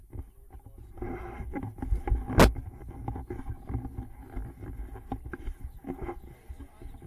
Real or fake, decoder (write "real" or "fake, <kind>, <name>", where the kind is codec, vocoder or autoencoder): real